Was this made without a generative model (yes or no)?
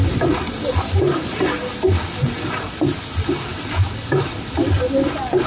yes